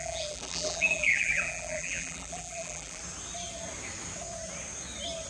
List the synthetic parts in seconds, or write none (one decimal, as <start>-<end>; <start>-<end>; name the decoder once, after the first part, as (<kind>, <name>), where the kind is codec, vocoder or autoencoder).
0.0-3.0 (vocoder, BigVGAN v2)